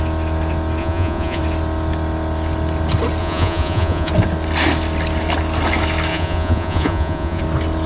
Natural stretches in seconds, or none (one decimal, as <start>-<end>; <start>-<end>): 0.0-0.8; 1.4-3.2; 4.1-6.1; 7.4-7.9